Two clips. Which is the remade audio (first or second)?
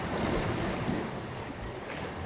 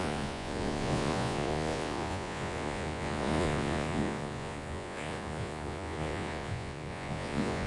second